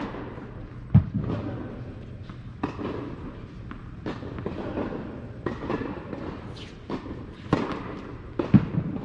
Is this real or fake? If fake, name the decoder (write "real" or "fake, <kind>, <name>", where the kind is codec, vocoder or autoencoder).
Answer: real